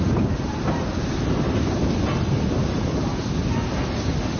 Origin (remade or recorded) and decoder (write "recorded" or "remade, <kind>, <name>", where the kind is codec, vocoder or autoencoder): recorded